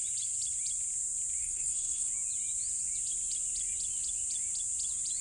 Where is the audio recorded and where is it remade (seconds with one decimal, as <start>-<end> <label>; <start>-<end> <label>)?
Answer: 0.0-1.4 recorded; 1.4-2.1 remade; 2.1-5.2 recorded